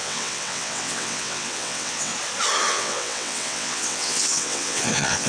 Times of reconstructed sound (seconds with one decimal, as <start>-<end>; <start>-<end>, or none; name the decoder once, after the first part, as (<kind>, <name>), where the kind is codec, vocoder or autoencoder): 0.0-2.1 (vocoder, WaveNeXt); 2.7-5.3